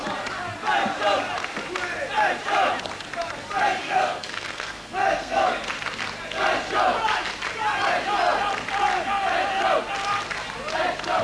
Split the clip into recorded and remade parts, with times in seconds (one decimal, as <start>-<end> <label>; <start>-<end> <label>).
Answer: 0.0-3.8 recorded; 3.8-5.5 remade; 5.5-11.2 recorded